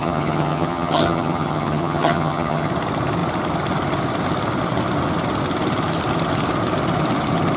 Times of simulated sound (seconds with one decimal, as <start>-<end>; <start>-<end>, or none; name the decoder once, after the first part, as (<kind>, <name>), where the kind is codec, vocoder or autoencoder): 0.0-2.7 (vocoder, HiFi-GAN)